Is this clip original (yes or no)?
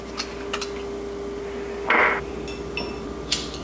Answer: yes